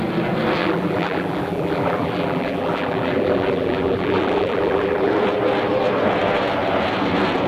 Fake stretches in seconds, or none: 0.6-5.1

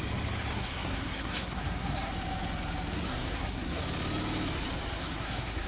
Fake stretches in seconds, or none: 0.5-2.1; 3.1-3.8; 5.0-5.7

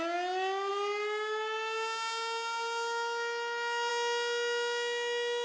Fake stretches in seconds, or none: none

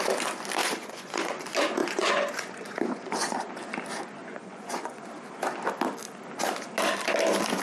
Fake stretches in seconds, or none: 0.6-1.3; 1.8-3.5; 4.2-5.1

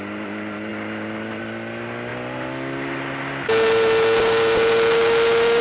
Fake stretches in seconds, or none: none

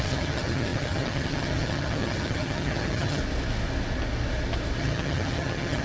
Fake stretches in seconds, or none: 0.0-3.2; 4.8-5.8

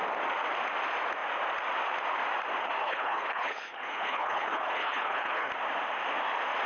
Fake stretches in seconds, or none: 2.8-5.5